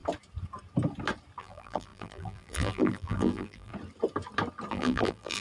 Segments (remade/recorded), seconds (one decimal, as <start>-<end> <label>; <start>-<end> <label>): 0.0-1.4 recorded; 1.4-3.7 remade; 3.7-4.7 recorded; 4.7-5.4 remade

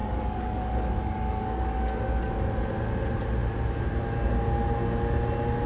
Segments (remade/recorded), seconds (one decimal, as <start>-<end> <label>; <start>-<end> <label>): 0.0-2.3 remade; 2.3-5.7 recorded

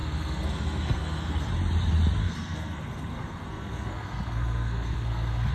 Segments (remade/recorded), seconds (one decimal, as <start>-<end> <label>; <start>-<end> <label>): 0.0-1.5 remade; 1.5-2.2 recorded; 2.2-5.5 remade